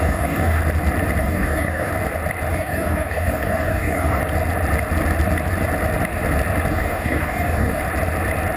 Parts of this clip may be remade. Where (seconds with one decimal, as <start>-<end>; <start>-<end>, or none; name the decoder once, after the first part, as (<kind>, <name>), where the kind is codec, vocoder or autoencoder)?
0.0-0.6 (codec, DAC); 1.2-1.9; 2.5-4.2; 6.7-7.8